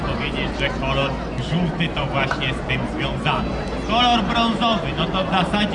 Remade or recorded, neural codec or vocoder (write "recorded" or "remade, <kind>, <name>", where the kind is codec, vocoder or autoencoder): recorded